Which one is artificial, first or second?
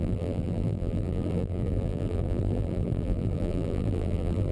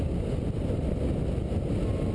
first